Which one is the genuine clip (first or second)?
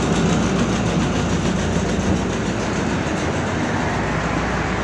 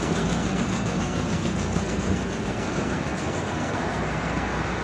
first